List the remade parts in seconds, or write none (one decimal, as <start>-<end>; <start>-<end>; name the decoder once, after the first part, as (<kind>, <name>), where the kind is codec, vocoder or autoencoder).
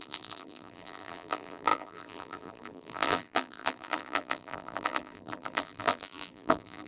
0.0-6.9 (vocoder, BigVGAN v2)